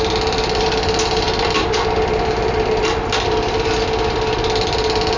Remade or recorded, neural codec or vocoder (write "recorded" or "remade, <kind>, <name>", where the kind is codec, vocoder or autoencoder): recorded